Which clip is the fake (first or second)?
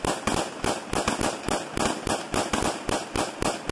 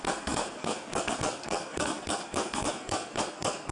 second